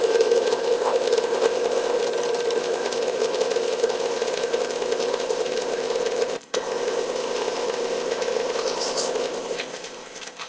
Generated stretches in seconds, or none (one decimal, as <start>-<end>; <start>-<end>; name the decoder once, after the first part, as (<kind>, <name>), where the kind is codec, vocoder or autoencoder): 0.0-2.0 (codec, ZipCodec); 2.6-10.5